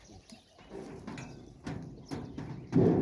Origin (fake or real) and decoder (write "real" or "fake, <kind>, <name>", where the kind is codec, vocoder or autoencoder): real